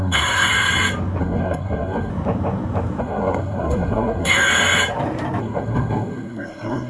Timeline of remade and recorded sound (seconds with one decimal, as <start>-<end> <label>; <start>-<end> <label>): 0.0-0.5 remade; 0.5-1.2 recorded; 1.2-2.1 remade; 2.1-3.0 recorded; 3.0-4.5 remade; 4.5-5.4 recorded; 5.4-6.9 remade